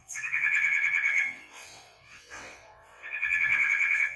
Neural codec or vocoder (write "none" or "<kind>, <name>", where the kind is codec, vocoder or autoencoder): vocoder, WaveNeXt